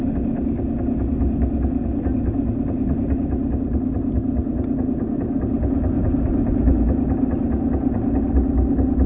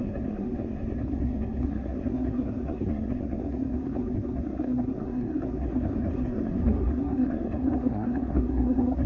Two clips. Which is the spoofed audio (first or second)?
second